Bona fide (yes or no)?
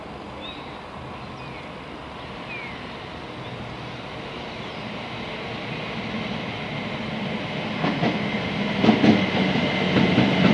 yes